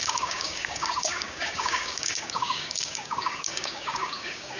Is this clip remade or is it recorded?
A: remade